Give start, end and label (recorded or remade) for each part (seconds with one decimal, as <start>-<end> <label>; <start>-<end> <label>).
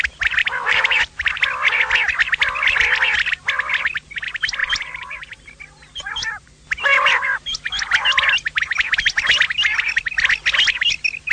0.0-0.4 recorded; 0.4-1.3 remade; 1.3-4.6 recorded; 4.6-5.6 remade; 5.6-11.3 recorded